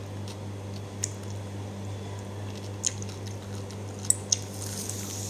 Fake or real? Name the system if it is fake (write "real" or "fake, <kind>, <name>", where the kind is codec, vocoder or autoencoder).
real